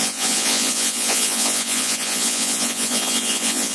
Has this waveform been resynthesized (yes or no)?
yes